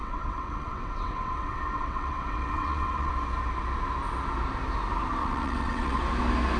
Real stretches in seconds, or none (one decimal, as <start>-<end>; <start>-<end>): 3.1-5.2; 6.0-6.6